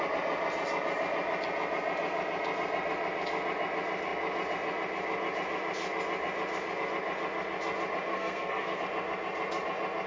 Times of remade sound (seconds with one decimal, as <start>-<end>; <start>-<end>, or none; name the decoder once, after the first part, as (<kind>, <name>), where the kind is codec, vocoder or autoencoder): 8.1-8.8 (codec, SNAC)